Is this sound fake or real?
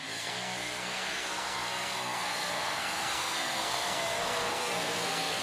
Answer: fake